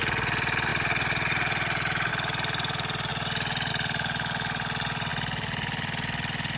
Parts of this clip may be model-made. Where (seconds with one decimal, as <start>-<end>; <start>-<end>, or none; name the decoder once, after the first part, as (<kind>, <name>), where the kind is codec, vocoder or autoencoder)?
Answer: none